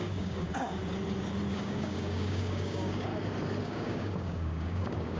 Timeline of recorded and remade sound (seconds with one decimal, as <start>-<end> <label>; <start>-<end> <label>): 0.0-0.8 remade; 0.8-1.5 recorded; 1.5-3.1 remade; 3.1-3.6 recorded; 3.6-5.2 remade